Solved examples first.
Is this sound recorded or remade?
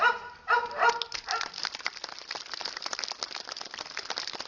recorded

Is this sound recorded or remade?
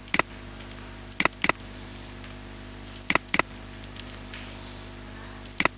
recorded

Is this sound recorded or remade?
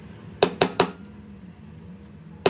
recorded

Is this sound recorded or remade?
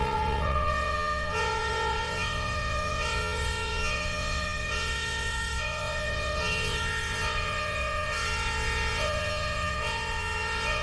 remade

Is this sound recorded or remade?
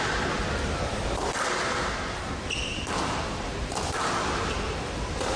recorded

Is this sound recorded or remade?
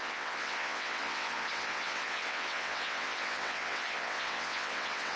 remade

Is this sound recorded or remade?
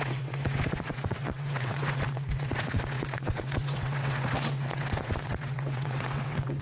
remade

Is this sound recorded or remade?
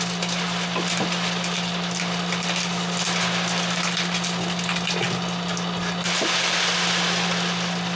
recorded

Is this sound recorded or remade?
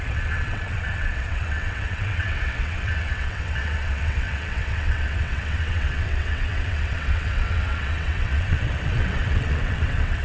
remade